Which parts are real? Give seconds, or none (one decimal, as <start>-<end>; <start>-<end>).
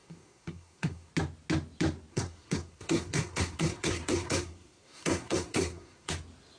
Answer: 1.1-2.1; 6.1-6.6